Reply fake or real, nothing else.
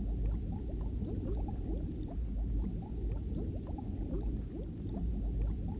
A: real